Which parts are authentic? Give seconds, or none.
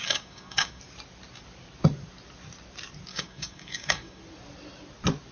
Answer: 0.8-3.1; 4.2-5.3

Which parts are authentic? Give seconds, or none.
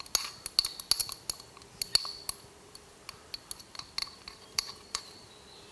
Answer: 0.0-4.0; 5.3-5.7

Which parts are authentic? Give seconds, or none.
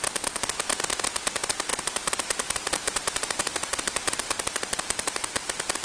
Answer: 0.0-1.7; 5.2-5.8